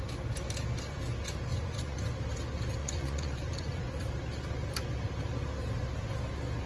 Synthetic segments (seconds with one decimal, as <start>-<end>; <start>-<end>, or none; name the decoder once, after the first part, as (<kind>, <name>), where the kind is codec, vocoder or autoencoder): 1.5-2.0 (vocoder, Vocos); 2.8-4.0